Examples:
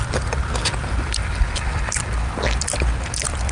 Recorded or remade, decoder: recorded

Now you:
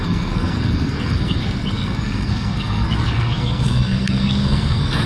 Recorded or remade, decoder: remade, codec, SNAC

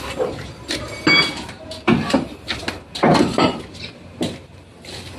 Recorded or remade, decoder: recorded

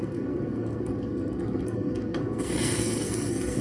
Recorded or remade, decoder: remade, codec, SNAC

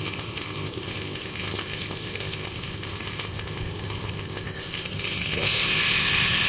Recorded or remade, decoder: remade, codec, ZipCodec